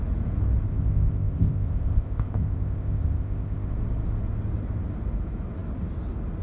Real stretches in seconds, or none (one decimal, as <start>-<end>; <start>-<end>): 0.0-0.7; 3.7-6.4